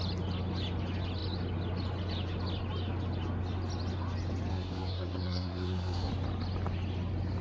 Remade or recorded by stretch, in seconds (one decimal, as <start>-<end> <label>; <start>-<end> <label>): 0.0-4.5 recorded; 4.5-6.1 remade; 6.1-7.4 recorded